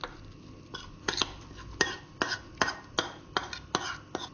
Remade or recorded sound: recorded